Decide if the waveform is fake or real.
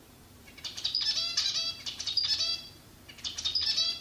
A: fake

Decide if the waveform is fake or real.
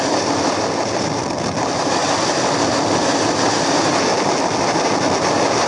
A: real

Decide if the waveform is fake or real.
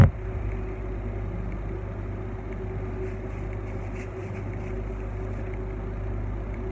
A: real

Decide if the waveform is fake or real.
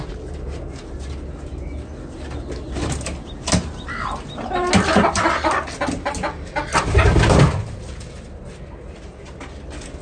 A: real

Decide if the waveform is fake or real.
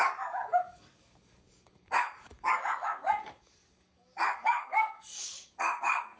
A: fake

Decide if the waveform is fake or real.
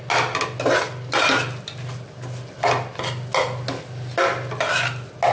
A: real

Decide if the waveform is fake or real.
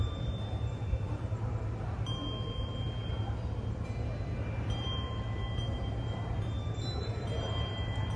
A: fake